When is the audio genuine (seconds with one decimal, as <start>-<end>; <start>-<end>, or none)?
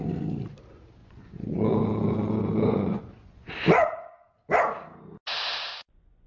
0.0-1.0; 3.5-5.7